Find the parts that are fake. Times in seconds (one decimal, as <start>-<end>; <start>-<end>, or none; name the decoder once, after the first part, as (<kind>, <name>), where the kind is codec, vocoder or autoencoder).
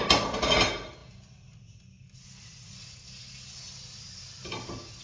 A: none